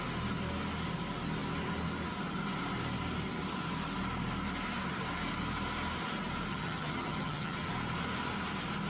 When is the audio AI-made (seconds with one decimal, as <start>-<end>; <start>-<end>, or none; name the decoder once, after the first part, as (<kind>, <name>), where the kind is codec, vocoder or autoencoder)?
6.5-7.7 (vocoder, HiFi-GAN)